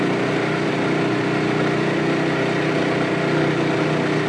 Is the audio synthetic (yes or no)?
no